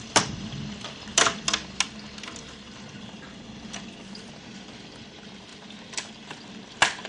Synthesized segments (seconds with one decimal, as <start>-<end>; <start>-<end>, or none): 0.0-1.1; 4.8-5.5; 6.1-7.1